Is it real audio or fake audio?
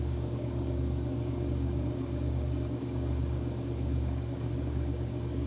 fake